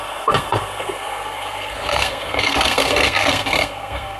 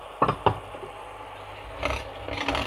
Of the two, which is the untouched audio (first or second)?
second